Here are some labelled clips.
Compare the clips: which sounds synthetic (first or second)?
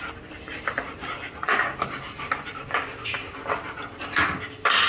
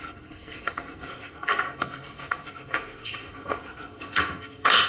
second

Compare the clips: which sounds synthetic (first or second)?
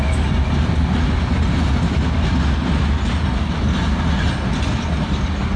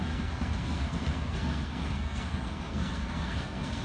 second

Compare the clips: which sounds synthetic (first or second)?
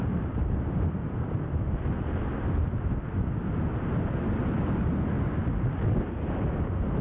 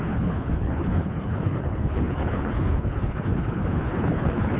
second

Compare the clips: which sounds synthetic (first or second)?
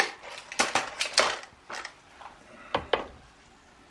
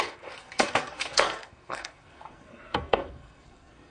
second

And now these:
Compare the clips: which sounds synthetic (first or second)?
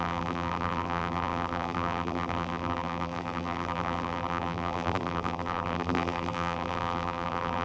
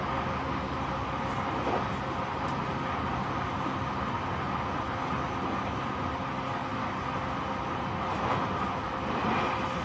first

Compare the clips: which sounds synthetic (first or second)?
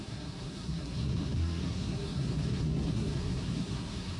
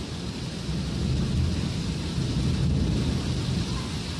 first